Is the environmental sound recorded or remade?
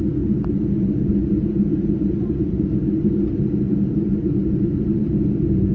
recorded